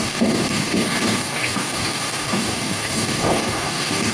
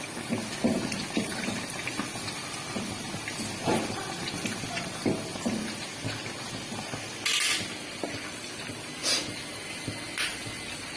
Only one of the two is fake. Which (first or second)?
first